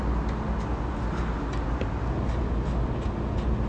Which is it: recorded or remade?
recorded